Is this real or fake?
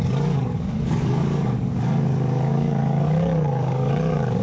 fake